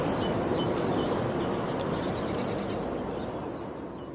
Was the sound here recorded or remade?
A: remade